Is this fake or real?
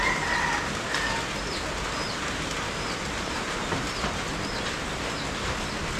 real